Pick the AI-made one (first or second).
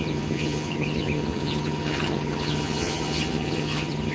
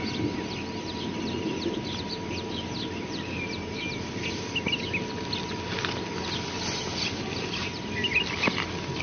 first